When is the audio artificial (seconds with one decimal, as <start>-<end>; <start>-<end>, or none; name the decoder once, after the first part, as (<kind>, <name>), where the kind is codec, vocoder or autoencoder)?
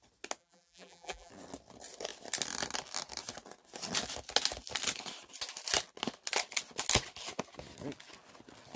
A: 0.4-1.3 (vocoder, BigVGAN v2)